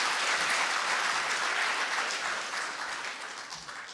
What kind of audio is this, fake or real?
real